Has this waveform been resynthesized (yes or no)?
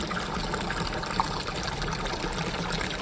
no